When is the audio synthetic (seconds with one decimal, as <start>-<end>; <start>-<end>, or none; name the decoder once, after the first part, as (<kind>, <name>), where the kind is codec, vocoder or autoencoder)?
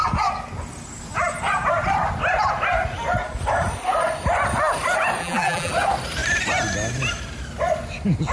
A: 5.2-5.7 (vocoder, BigVGAN v2)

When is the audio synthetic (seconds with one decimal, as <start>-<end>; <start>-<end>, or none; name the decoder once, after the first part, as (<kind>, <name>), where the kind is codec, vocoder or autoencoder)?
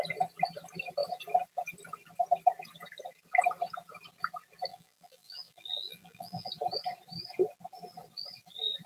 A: 4.7-6.5 (vocoder, BigVGAN v2)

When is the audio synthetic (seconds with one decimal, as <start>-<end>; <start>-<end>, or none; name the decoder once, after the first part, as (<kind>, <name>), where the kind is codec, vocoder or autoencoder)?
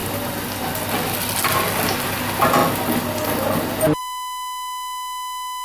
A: none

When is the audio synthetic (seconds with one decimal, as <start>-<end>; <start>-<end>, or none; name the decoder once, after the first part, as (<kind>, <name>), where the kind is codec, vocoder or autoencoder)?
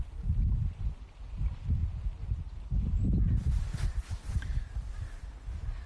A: 0.0-1.8 (vocoder, BigVGAN v2); 3.2-5.9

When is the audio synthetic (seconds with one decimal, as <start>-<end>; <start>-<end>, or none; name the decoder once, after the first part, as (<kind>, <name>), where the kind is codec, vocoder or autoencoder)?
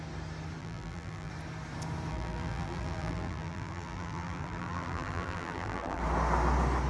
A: 0.6-1.3 (vocoder, BigVGAN v2); 2.1-6.0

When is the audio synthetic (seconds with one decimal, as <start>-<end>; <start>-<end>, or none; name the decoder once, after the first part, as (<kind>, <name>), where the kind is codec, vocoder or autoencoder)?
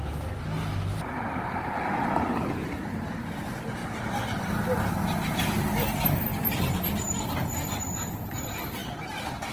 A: none